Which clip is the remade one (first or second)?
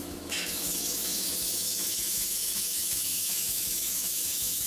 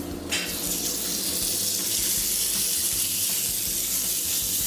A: first